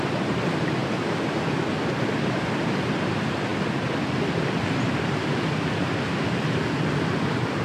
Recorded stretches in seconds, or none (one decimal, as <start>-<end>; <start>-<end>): 0.0-7.6